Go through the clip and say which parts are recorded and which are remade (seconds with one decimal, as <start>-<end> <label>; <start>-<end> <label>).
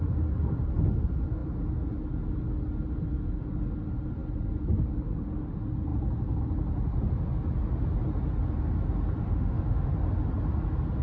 0.0-9.2 recorded; 9.2-9.9 remade; 9.9-11.0 recorded